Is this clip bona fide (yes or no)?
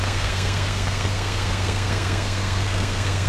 no